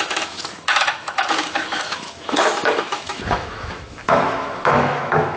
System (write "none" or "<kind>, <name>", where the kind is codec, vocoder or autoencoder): autoencoder, DAC-VAE